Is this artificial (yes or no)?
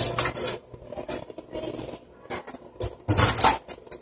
no